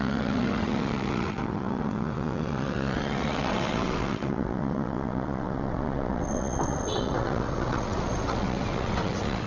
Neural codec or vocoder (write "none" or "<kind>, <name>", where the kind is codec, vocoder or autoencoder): vocoder, WaveNeXt